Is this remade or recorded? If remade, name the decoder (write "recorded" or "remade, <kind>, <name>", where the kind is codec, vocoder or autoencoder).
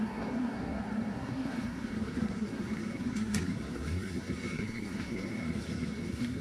remade, codec, SNAC